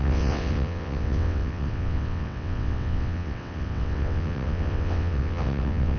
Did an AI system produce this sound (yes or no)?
yes